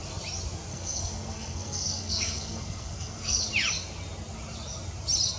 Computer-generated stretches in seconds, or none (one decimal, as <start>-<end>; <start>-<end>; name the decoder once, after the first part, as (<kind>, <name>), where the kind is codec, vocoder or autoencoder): 0.7-3.4 (codec, SNAC)